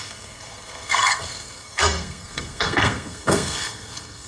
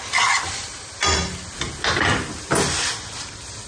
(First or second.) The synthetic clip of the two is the first